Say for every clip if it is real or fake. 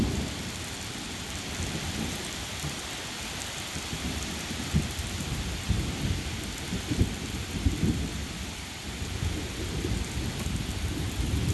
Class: fake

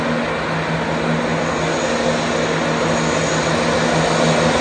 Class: real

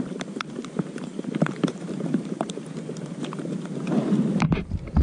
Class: fake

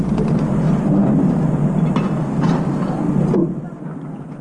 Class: real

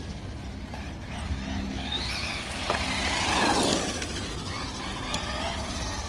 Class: real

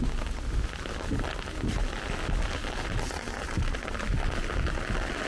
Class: real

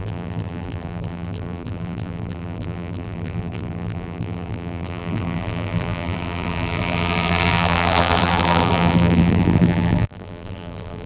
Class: fake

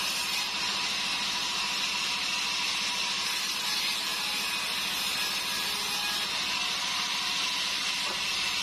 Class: real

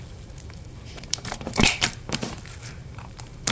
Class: fake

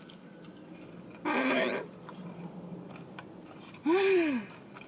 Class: fake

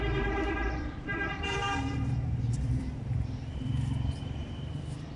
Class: fake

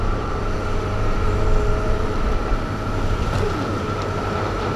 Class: fake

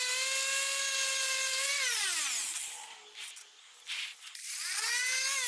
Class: real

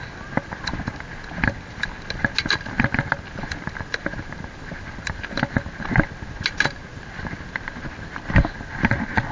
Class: real